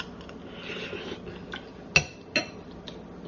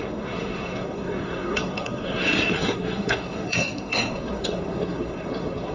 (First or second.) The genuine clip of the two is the first